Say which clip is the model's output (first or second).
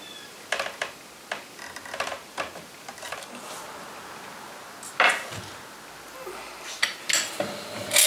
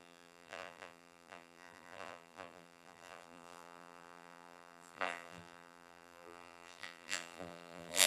second